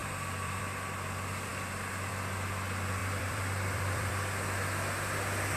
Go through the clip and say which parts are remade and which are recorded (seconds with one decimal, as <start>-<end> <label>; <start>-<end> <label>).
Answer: 0.0-0.6 remade; 0.6-3.0 recorded; 3.0-4.1 remade; 4.1-5.6 recorded